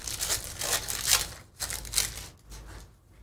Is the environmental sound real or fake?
real